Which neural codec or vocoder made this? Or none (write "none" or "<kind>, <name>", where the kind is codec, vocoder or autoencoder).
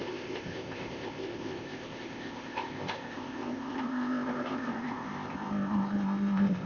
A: codec, ZipCodec